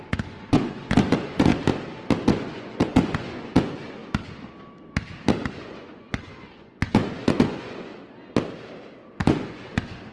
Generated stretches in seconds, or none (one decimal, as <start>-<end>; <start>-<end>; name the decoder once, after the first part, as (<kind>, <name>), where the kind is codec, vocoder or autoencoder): 0.0-1.5 (vocoder, Vocos); 2.2-4.0; 5.5-7.9; 9.1-10.1